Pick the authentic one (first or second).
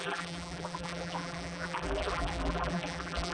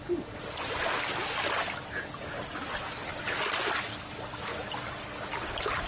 second